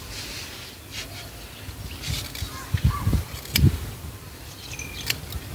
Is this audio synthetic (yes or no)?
no